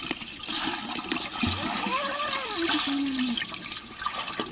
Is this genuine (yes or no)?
yes